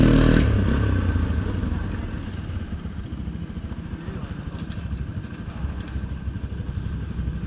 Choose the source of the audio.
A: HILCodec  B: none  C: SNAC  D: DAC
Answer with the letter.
B